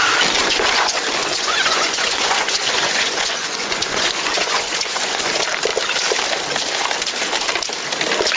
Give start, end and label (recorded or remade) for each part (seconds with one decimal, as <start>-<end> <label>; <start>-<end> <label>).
0.0-0.4 recorded; 0.4-5.3 remade; 5.3-8.4 recorded